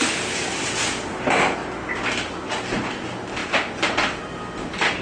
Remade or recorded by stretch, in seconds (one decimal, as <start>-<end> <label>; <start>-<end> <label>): 0.0-5.0 recorded